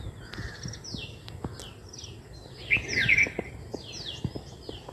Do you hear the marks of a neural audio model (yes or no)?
no